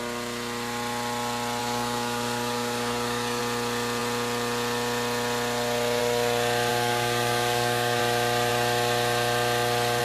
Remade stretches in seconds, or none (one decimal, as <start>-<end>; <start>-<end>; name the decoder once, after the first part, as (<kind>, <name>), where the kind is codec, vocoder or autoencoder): 1.6-3.4 (codec, DAC); 6.7-8.0

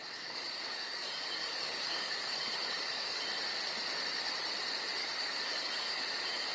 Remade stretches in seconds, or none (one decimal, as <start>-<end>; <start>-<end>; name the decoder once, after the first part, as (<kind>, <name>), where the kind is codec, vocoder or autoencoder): 0.0-3.2 (codec, DAC); 5.0-6.0

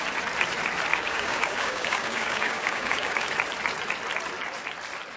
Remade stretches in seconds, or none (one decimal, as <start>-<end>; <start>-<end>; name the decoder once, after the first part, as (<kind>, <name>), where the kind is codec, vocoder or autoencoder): 0.9-3.3 (codec, DAC)

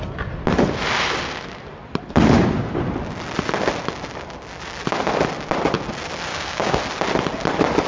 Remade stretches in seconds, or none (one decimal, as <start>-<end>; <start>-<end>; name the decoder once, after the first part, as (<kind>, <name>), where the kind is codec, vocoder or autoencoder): 6.3-6.8 (codec, DAC)